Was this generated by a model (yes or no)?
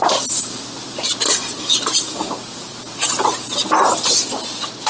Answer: no